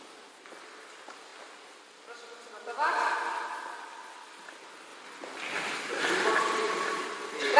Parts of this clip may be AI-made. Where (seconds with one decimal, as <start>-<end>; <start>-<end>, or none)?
none